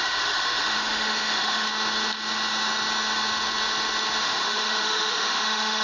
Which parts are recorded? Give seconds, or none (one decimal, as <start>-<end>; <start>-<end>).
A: 1.7-4.2